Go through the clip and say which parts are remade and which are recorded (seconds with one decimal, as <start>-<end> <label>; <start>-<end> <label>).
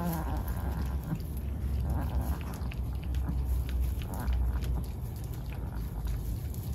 0.0-6.7 recorded